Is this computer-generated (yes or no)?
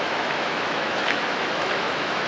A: yes